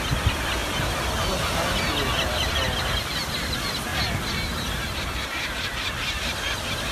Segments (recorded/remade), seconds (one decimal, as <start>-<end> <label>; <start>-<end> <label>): 0.0-6.9 recorded